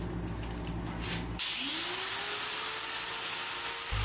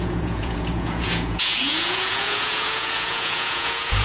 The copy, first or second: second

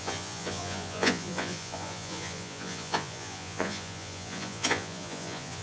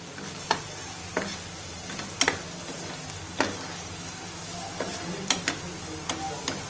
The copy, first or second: first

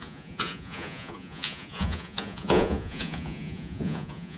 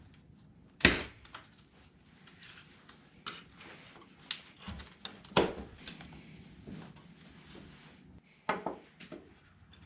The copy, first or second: first